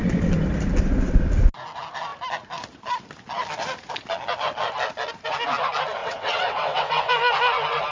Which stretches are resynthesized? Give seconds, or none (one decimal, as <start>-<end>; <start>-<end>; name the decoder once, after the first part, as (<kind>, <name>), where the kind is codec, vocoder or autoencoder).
6.0-7.1 (vocoder, WaveNeXt)